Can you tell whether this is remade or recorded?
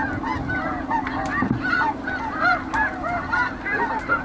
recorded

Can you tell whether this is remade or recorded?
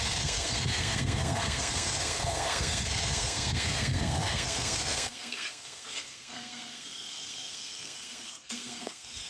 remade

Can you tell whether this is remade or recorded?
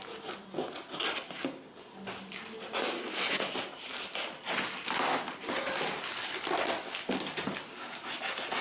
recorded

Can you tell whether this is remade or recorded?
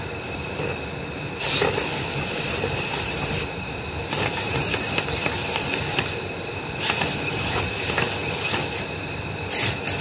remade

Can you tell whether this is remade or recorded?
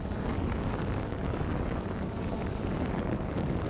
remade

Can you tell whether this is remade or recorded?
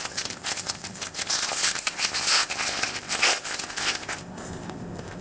remade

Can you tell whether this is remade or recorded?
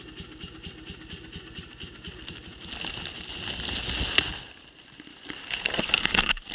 recorded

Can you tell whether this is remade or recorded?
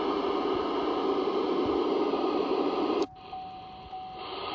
recorded